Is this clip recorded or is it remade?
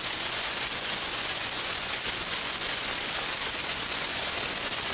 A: remade